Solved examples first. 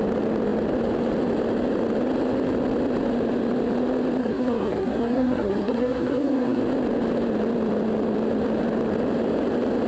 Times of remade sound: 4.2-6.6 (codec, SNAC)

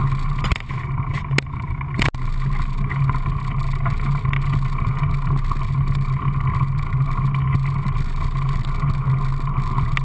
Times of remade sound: none

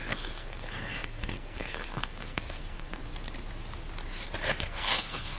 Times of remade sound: 0.0-3.0 (codec, SNAC); 4.6-5.4